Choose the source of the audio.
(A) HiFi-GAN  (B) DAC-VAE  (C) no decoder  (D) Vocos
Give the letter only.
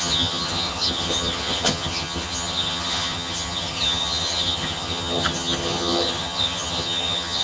A